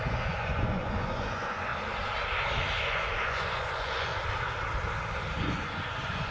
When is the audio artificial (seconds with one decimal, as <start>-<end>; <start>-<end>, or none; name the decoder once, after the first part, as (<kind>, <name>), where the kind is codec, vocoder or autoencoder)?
0.0-1.7 (vocoder, Vocos); 2.8-4.1; 5.4-6.3